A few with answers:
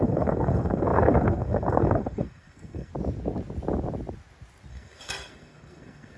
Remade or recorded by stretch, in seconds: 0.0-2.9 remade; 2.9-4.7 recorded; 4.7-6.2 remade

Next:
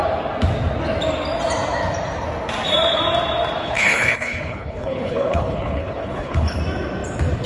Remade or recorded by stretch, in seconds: 0.0-3.6 recorded; 3.6-6.6 remade; 6.6-7.5 recorded

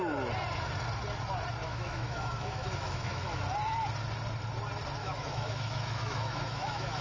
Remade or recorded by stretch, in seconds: 0.0-1.6 recorded; 1.6-3.4 remade; 3.4-5.0 recorded; 5.0-7.0 remade

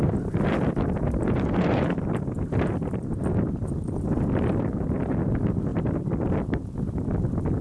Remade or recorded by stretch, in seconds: 0.0-7.6 recorded

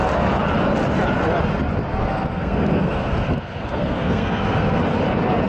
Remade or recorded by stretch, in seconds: 0.0-2.0 recorded; 2.0-4.8 remade; 4.8-5.5 recorded

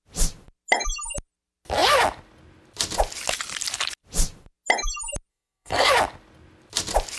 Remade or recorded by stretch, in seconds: 0.0-5.3 recorded; 5.3-5.9 remade; 5.9-7.2 recorded